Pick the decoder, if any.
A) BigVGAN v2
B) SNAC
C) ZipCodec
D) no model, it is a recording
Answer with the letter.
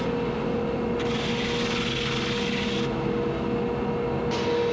D